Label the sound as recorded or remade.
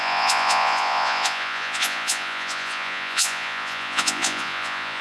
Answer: remade